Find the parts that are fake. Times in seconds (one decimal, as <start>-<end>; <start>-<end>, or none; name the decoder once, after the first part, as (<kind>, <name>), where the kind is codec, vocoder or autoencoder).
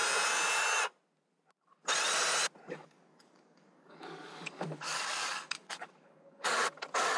2.7-7.2 (codec, DAC)